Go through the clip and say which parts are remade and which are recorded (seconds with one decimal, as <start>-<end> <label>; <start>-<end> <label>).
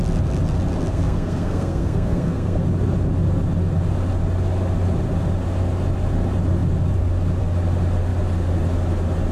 0.0-0.9 recorded; 0.9-2.6 remade; 2.6-9.3 recorded